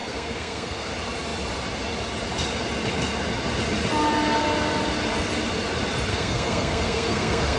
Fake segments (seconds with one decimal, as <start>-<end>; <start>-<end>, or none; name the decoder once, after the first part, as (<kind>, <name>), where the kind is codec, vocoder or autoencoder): 0.0-0.9 (codec, SNAC); 6.1-7.6